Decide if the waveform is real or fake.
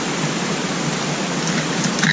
real